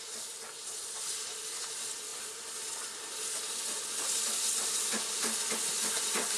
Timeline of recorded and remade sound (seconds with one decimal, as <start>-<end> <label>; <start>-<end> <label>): 0.0-6.4 recorded

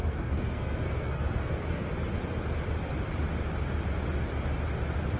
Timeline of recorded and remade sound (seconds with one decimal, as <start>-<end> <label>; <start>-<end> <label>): 0.0-1.9 remade; 1.9-5.2 recorded